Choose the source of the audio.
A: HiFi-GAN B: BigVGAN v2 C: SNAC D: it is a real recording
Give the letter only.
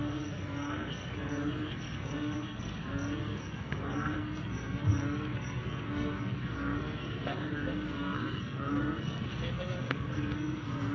C